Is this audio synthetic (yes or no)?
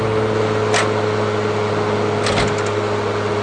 no